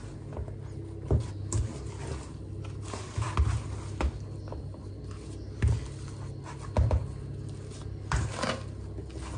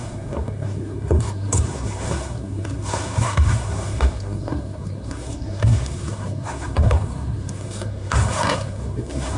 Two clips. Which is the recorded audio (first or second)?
first